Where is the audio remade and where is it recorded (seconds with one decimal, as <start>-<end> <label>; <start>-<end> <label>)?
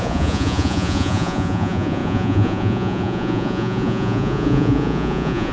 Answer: 0.0-5.5 remade